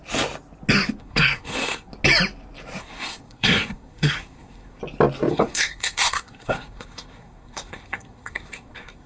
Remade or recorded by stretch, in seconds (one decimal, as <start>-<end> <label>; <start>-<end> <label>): 0.0-1.0 recorded; 1.0-1.9 remade; 1.9-2.8 recorded; 2.8-4.8 remade; 4.8-5.3 recorded; 5.3-9.1 remade